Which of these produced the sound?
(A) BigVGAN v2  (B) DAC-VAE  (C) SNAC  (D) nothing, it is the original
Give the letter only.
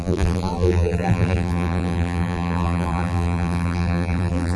A